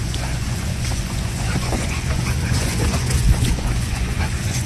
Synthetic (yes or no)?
yes